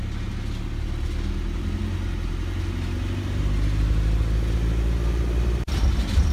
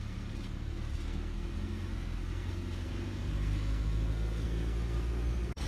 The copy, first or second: second